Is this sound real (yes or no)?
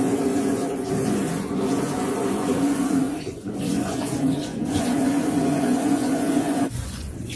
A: no